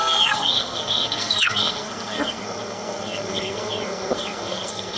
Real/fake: fake